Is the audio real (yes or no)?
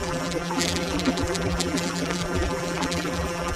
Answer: no